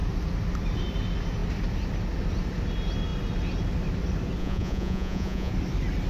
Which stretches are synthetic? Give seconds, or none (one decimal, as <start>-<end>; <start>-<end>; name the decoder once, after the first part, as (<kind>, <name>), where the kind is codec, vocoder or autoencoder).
4.4-5.5 (vocoder, Vocos)